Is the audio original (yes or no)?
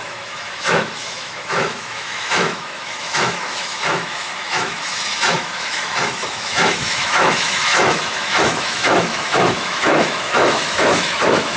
no